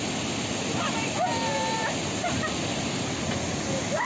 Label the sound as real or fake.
real